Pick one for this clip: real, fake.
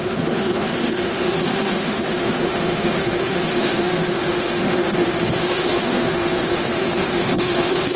fake